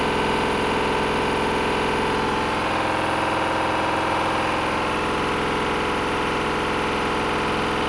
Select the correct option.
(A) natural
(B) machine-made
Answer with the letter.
A